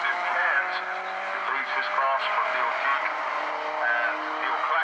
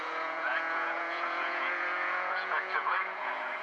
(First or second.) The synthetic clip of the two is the second